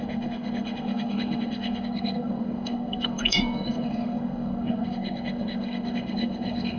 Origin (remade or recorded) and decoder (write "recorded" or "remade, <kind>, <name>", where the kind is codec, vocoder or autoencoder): remade, codec, SNAC